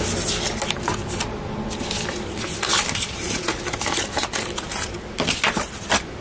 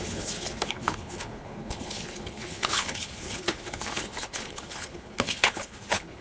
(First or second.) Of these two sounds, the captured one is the first